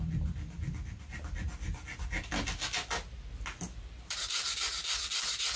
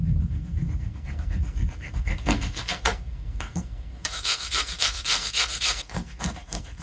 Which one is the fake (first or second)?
second